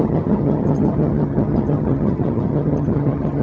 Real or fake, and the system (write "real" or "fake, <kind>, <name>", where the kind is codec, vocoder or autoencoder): fake, vocoder, HiFi-GAN